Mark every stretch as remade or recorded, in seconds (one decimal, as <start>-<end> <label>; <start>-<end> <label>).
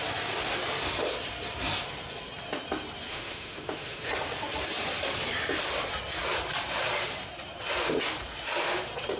0.0-3.1 recorded; 3.1-4.1 remade; 4.1-9.2 recorded